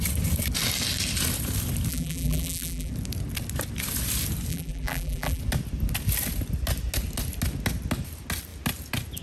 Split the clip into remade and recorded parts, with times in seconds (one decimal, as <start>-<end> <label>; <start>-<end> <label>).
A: 0.0-1.9 recorded; 1.9-2.9 remade; 2.9-4.5 recorded; 4.5-5.4 remade; 5.4-9.2 recorded